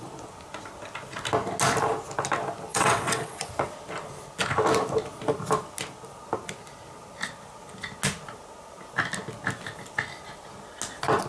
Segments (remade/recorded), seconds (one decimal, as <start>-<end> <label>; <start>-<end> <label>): 0.0-2.7 recorded; 2.7-3.5 remade; 3.5-11.3 recorded